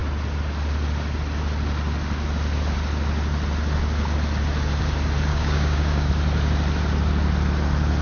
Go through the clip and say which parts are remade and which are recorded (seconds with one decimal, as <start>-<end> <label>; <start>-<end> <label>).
0.0-5.3 recorded; 5.3-6.1 remade; 6.1-8.0 recorded